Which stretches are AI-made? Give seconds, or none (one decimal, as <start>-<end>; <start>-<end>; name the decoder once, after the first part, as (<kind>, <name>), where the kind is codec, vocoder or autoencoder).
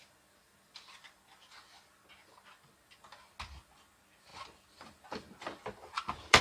4.3-6.4 (vocoder, BigVGAN v2)